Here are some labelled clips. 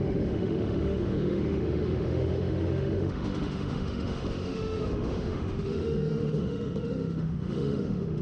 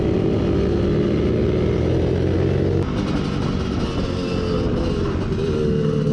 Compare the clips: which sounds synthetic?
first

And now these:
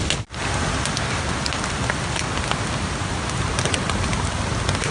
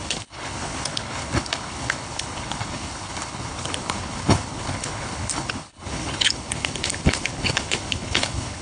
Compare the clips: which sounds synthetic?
second